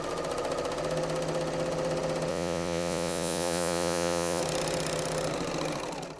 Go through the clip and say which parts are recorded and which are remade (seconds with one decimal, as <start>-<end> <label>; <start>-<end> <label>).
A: 0.0-2.3 recorded; 2.3-4.4 remade; 4.4-6.2 recorded